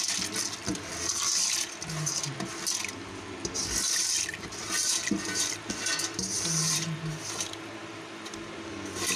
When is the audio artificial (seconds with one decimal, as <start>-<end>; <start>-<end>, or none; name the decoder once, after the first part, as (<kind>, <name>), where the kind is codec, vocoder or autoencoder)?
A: 2.8-6.2 (vocoder, BigVGAN v2)